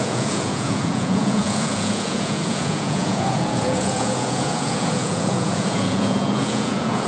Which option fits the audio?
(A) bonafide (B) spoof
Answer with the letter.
B